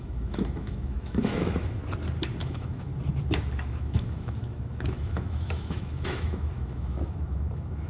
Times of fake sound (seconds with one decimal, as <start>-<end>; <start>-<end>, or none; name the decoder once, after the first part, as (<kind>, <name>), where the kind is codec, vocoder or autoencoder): 0.0-1.8 (autoencoder, DAC-VAE); 2.4-2.9; 3.6-7.9